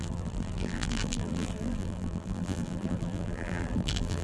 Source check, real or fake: fake